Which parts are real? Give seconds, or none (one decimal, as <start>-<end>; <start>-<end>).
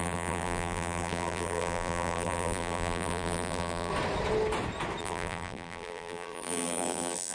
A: 3.9-5.0